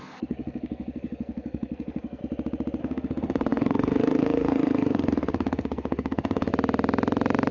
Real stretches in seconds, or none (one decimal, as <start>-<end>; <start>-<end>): 2.2-2.8; 6.5-7.5